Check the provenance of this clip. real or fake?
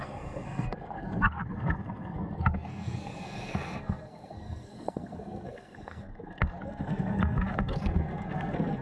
fake